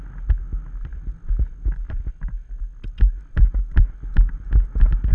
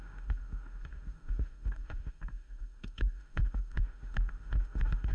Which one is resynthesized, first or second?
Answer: second